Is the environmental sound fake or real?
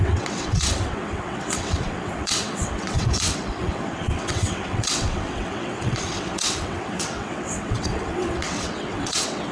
fake